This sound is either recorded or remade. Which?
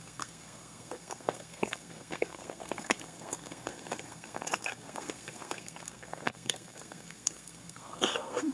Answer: remade